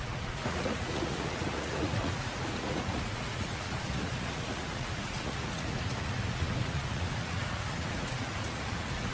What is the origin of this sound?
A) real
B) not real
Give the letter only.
B